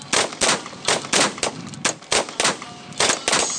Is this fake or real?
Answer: real